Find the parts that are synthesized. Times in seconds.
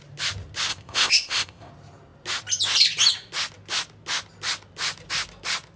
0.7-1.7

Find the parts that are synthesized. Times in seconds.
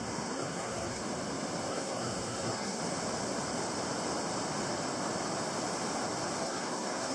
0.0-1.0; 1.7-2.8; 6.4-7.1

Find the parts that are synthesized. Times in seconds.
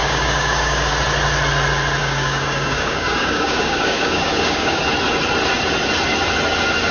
0.0-0.9; 2.0-4.8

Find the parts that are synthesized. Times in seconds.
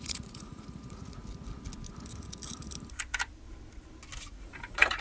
0.0-1.2; 4.2-5.0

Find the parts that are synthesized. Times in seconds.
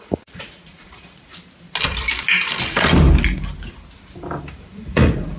0.0-1.3; 4.5-5.4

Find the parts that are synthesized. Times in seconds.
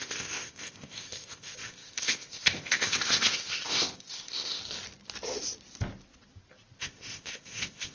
0.0-4.6; 6.8-7.9